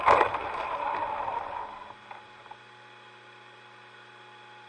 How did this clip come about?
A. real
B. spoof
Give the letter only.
A